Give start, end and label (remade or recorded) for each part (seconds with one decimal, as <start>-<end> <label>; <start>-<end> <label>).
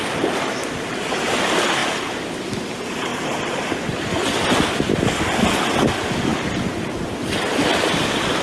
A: 0.0-8.4 recorded